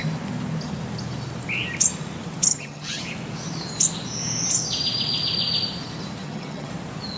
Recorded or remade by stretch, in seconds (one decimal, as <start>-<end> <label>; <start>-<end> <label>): 0.0-2.5 recorded; 2.5-3.0 remade; 3.0-6.2 recorded; 6.2-6.7 remade; 6.7-7.2 recorded